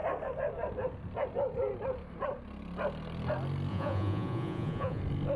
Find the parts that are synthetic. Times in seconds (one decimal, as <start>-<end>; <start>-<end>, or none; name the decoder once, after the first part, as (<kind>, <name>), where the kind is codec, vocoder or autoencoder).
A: 3.7-5.0 (vocoder, Vocos)